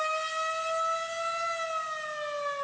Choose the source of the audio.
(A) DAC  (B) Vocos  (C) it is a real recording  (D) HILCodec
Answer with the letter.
C